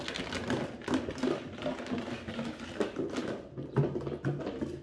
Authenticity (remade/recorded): recorded